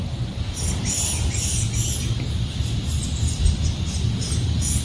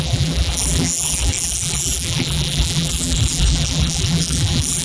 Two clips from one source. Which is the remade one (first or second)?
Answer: second